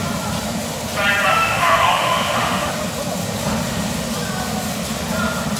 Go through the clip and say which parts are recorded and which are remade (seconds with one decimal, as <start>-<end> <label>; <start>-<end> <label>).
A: 0.0-1.3 recorded; 1.3-2.7 remade; 2.7-5.6 recorded